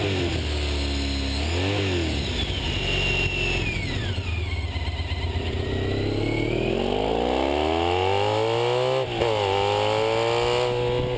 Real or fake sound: real